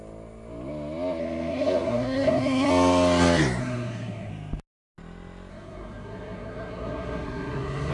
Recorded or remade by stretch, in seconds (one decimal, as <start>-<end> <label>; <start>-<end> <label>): 0.0-1.2 recorded; 1.2-2.7 remade; 2.7-3.6 recorded; 3.6-4.3 remade; 4.3-5.5 recorded; 5.5-7.9 remade